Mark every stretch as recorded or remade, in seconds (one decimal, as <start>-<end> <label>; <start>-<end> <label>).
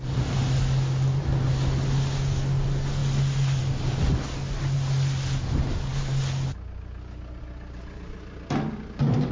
0.0-9.3 recorded